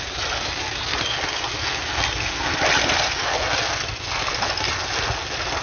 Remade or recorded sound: recorded